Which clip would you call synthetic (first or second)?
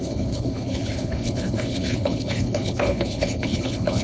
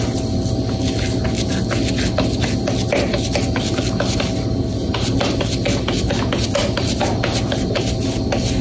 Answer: first